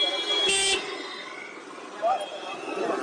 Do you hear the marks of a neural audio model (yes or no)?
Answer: no